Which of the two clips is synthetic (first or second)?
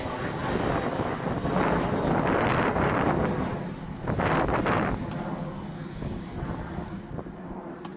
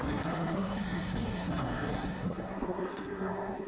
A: second